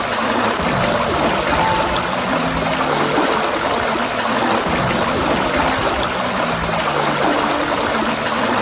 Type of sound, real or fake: real